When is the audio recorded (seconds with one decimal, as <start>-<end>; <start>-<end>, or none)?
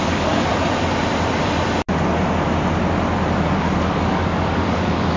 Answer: 0.5-3.6